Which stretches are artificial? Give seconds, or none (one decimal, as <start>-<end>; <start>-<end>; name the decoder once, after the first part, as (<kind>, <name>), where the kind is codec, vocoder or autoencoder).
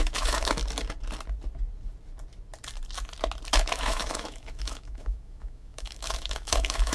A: 0.0-0.6 (autoencoder, DAC-VAE); 3.5-6.9